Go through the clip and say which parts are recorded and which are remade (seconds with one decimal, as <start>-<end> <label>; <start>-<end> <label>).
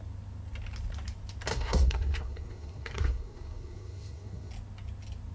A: 0.0-1.5 recorded; 1.5-4.5 remade; 4.5-5.3 recorded